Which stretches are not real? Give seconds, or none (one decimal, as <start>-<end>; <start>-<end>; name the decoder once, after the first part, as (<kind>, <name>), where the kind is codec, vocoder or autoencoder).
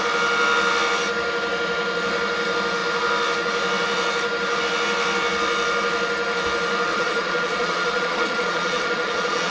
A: 6.9-9.5 (vocoder, Vocos)